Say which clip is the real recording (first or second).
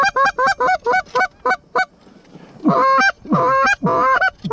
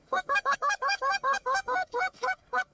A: first